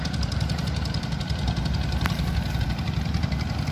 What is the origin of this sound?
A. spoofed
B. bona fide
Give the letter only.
A